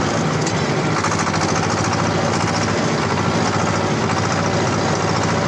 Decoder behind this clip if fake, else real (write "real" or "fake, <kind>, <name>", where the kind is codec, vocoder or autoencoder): real